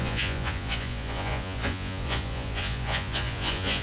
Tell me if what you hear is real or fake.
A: fake